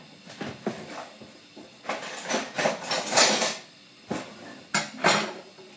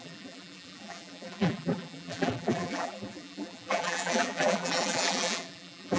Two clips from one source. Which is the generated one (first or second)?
second